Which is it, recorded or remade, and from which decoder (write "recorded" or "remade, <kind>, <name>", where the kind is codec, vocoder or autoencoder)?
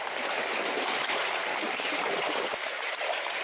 remade, vocoder, BigVGAN v2